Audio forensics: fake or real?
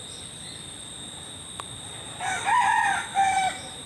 fake